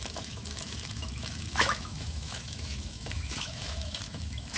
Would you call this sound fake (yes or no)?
yes